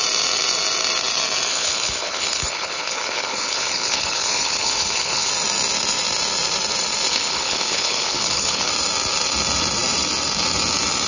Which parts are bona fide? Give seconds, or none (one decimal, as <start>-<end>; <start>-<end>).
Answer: 0.0-1.5; 5.3-7.1; 8.7-11.1